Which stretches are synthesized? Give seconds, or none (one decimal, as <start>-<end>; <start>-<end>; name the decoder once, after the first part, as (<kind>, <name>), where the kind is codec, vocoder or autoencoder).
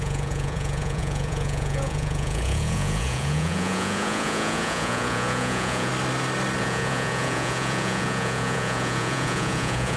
0.0-5.9 (vocoder, Vocos); 6.6-10.0